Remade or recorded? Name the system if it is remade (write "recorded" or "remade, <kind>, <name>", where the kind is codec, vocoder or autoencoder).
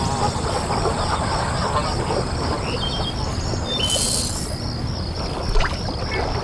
recorded